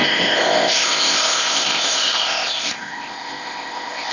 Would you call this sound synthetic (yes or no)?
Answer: yes